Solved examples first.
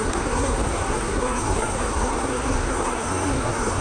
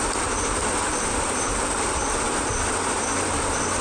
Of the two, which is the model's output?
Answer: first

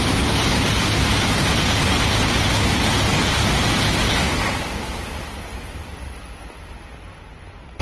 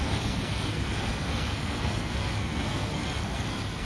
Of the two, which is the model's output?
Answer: second